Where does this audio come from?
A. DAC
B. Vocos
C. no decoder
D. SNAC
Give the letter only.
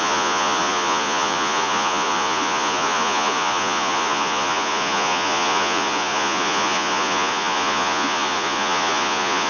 B